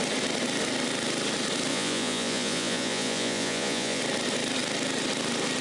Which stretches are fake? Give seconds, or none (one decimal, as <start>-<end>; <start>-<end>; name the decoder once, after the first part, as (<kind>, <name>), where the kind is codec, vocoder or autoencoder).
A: 1.7-4.0 (vocoder, Vocos)